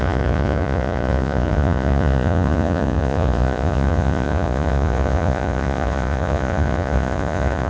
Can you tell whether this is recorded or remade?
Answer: remade